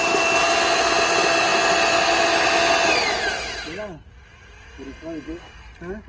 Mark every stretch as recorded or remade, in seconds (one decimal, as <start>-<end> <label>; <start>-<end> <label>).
0.0-6.1 recorded